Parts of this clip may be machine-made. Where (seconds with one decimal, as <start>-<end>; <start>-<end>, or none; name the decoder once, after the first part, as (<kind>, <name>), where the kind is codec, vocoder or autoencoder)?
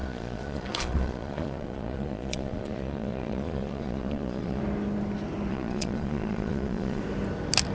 0.0-4.6 (vocoder, Vocos); 5.5-7.0